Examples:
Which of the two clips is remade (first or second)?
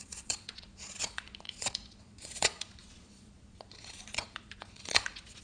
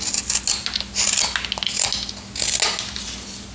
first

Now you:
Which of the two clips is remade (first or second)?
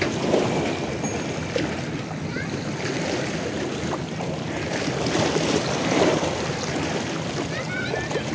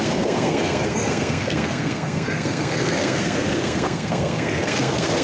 second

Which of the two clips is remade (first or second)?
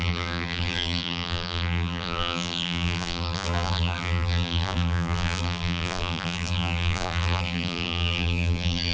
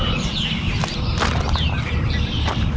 first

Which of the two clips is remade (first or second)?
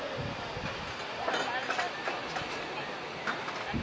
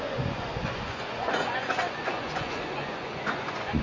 second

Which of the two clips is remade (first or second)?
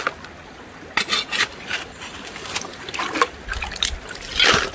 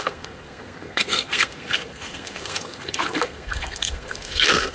second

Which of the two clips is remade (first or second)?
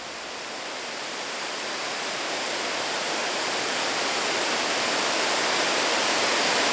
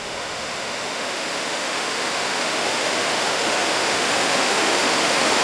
second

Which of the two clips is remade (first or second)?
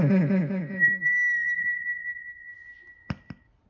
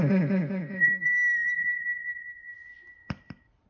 second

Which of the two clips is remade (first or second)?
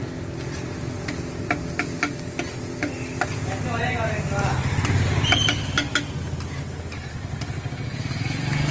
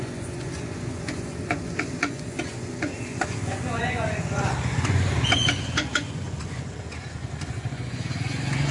second